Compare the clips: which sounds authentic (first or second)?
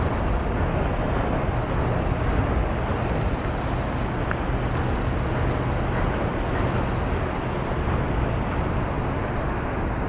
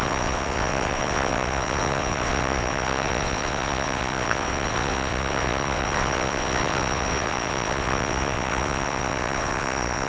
first